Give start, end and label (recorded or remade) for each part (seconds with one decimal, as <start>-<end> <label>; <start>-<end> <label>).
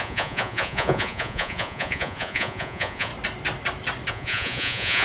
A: 0.0-3.1 remade; 3.1-4.1 recorded; 4.1-5.0 remade